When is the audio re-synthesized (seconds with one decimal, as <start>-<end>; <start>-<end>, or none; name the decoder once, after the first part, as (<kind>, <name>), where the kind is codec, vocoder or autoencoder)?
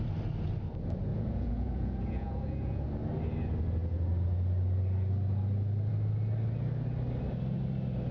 1.1-2.8 (vocoder, Vocos)